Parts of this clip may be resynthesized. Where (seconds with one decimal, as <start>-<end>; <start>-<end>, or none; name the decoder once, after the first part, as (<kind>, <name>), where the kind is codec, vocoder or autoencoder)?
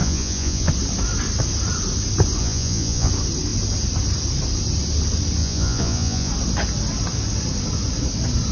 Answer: 0.0-0.7 (vocoder, Vocos); 2.4-3.1; 5.4-6.3